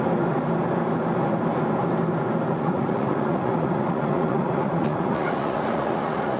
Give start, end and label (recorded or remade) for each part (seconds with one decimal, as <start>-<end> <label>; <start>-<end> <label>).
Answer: 0.0-2.5 recorded; 2.5-6.4 remade